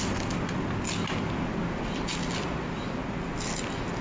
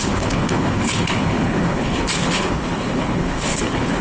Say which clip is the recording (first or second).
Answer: first